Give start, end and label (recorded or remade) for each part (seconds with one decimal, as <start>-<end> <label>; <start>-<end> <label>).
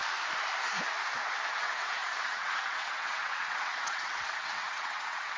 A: 0.0-1.5 recorded; 1.5-5.4 remade